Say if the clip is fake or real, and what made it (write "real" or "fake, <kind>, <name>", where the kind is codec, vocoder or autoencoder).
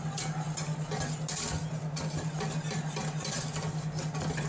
real